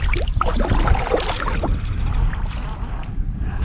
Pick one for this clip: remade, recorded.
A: recorded